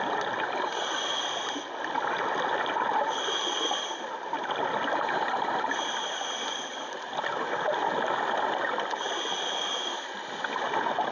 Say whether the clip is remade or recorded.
recorded